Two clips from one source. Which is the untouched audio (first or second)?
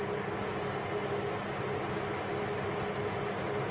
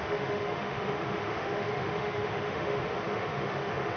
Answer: first